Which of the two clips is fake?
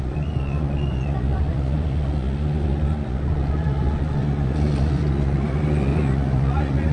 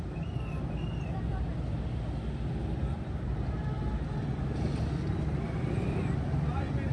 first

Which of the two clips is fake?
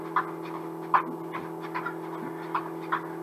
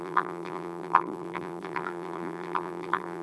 second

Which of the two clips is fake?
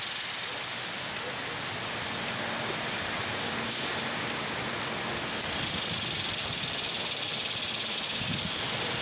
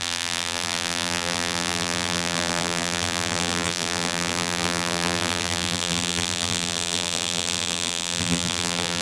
second